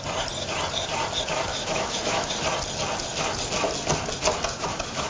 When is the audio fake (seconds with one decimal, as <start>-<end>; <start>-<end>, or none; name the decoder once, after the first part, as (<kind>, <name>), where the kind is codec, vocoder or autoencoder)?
1.5-2.3 (autoencoder, DAC-VAE); 4.3-5.1